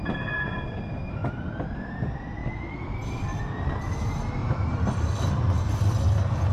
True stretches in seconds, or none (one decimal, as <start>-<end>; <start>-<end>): 0.0-2.4; 3.4-4.4; 6.1-6.5